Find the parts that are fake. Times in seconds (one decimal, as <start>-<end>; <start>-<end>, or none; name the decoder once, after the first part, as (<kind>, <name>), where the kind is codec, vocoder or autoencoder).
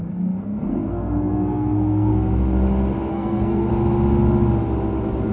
0.0-2.1 (codec, SNAC); 3.1-3.7